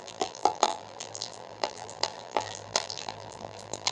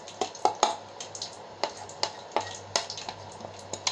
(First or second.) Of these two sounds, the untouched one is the second